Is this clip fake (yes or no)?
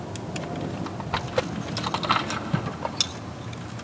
no